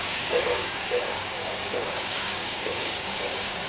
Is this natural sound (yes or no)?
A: no